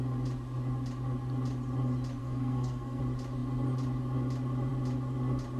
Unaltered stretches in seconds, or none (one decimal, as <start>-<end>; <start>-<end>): 0.0-2.2; 3.0-5.6